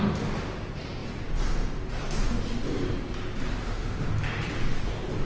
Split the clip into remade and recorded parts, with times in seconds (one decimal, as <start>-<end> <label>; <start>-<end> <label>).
0.0-3.6 recorded; 3.6-4.1 remade; 4.1-5.3 recorded